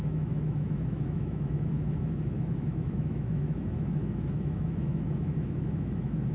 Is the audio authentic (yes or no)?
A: no